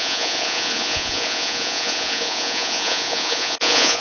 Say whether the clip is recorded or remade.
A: remade